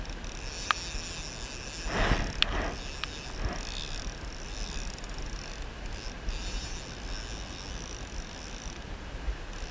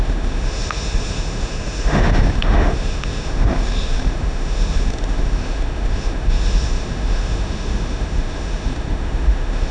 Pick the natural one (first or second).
first